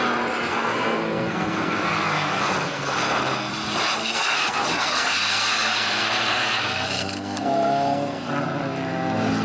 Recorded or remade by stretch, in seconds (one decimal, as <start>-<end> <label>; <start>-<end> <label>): 0.0-0.5 recorded; 0.5-3.5 remade; 3.5-4.0 recorded; 4.0-8.3 remade; 8.3-9.4 recorded

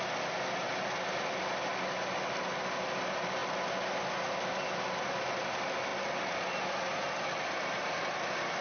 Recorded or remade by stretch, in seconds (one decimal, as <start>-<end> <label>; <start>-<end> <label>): 0.0-8.6 recorded

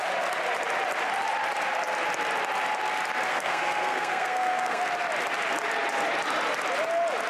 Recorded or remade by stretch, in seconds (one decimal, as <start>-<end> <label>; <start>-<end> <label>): 0.0-3.3 recorded; 3.3-4.8 remade; 4.8-7.3 recorded